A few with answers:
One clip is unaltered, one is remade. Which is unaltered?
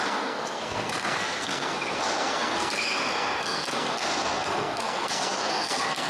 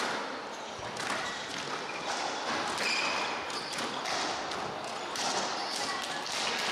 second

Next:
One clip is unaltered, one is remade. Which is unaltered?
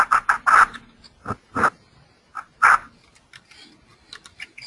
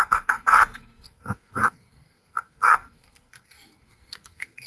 first